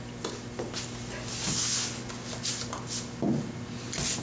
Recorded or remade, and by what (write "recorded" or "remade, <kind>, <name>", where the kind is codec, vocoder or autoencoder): recorded